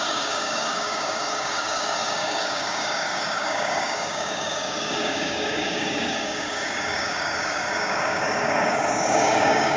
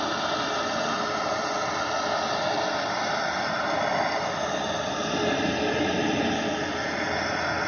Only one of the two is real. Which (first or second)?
second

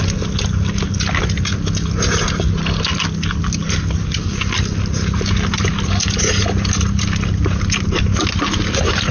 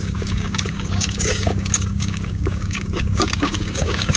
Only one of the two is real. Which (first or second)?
first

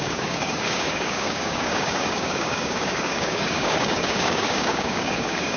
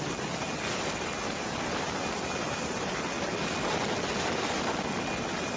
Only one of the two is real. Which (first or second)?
second